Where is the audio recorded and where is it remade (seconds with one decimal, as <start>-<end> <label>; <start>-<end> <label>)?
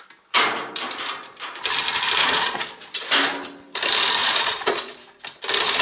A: 0.0-2.2 recorded; 2.2-3.1 remade; 3.1-4.2 recorded; 4.2-5.0 remade; 5.0-5.8 recorded